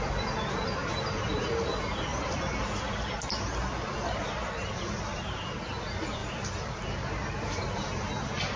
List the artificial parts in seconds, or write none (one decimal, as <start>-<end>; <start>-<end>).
none